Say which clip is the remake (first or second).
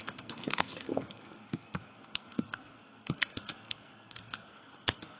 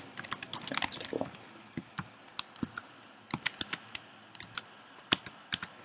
first